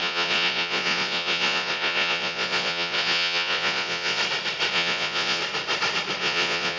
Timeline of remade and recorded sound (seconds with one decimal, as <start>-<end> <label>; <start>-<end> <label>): 0.0-4.2 remade; 4.2-4.7 recorded; 4.7-5.4 remade; 5.4-6.2 recorded; 6.2-6.8 remade